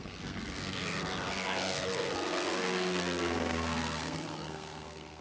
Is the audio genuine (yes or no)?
no